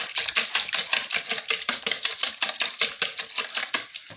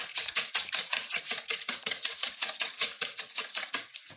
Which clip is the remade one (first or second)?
second